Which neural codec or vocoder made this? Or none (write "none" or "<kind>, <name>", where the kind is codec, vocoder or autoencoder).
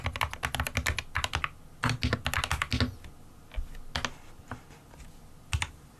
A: none